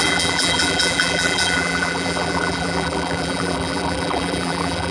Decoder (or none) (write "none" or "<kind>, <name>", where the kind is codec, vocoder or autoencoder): vocoder, BigVGAN v2